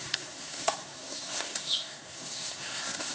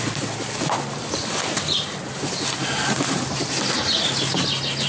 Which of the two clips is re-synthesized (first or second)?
first